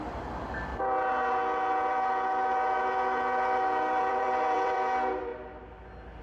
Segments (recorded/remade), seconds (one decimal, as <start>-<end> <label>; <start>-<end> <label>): 0.0-0.7 remade; 0.7-4.0 recorded; 4.0-5.3 remade; 5.3-6.2 recorded